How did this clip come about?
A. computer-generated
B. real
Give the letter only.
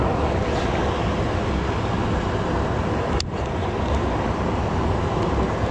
B